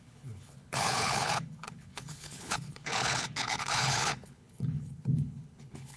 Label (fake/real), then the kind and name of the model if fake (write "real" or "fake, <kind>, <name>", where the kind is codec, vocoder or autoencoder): fake, codec, HILCodec